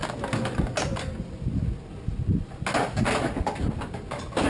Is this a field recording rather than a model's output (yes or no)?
yes